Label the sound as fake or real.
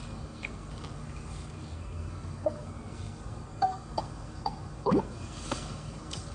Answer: fake